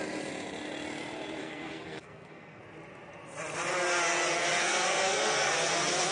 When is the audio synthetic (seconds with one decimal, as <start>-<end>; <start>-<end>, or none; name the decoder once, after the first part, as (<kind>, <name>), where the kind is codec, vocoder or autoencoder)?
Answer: 1.4-2.6 (codec, SNAC); 4.6-5.5